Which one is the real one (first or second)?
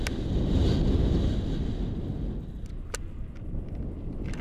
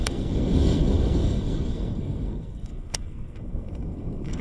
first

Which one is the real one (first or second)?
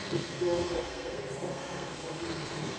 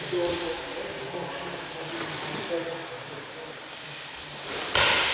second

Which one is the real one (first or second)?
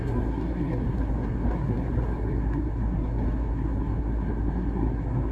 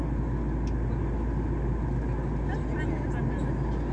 second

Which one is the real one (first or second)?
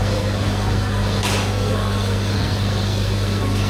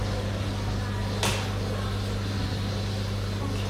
second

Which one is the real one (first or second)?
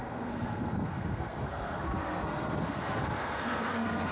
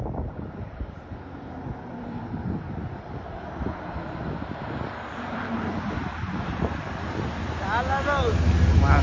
second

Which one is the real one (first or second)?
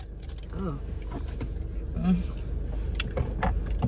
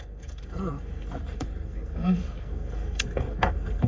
first